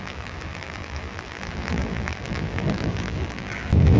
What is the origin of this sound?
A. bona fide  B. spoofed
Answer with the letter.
B